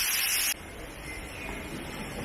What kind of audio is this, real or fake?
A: real